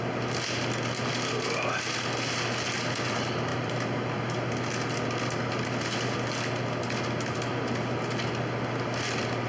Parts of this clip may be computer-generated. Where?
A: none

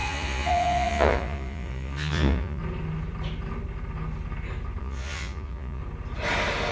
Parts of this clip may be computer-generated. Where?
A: 0.0-2.6 (vocoder, Vocos); 4.8-5.8

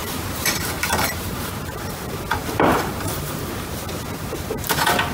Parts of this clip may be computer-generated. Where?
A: 0.0-1.8 (vocoder, BigVGAN v2); 2.4-3.4

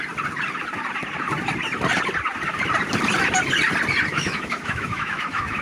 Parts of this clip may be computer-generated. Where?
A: 4.1-5.6 (autoencoder, DAC-VAE)

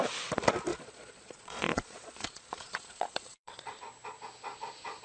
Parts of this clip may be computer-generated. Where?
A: 0.7-3.7 (vocoder, Vocos)

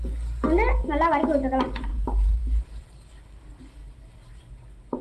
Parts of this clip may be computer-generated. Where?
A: 1.9-2.8 (vocoder, BigVGAN v2); 3.8-5.0

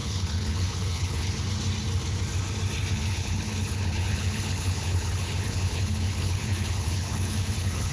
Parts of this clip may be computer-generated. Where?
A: 0.0-1.3 (codec, HILCodec); 2.9-7.9